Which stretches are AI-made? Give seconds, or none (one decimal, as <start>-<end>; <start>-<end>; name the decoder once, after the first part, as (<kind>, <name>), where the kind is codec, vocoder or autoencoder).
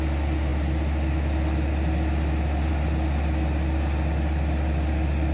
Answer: none